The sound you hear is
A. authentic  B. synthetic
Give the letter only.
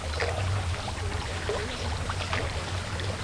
A